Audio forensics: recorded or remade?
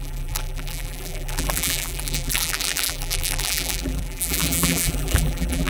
remade